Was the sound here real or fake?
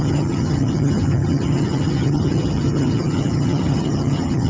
fake